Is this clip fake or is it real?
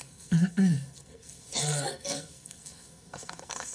fake